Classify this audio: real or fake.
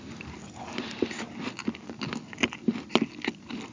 real